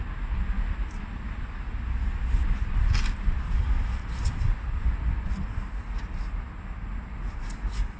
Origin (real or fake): real